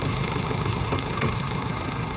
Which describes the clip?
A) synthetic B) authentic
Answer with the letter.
A